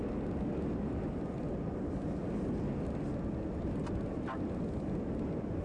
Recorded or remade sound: recorded